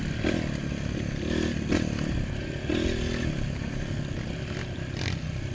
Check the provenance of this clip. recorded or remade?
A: recorded